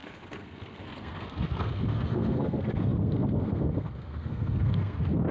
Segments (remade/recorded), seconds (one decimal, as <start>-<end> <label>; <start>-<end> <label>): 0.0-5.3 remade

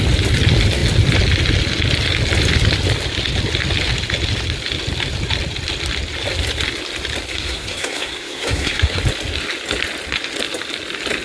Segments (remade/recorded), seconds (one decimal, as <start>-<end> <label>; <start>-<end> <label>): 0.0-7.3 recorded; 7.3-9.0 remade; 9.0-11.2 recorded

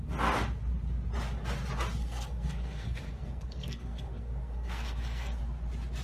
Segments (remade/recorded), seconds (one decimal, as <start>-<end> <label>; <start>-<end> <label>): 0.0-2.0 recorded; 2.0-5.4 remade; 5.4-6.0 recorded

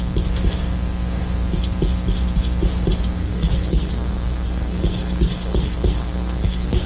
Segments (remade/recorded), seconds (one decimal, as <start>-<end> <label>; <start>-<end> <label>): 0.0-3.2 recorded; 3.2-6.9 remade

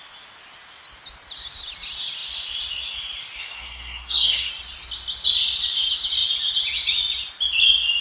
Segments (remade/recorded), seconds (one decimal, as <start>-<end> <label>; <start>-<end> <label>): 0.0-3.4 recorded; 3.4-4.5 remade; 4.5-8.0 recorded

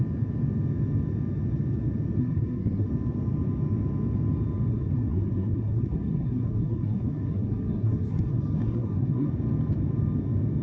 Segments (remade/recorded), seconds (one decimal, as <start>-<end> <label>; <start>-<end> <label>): 0.0-2.2 recorded; 2.2-2.9 remade; 2.9-4.7 recorded; 4.7-9.3 remade; 9.3-10.6 recorded